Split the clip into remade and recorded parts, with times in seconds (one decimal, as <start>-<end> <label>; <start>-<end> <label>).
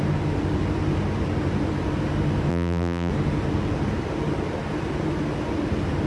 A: 0.0-2.5 recorded; 2.5-3.1 remade; 3.1-6.1 recorded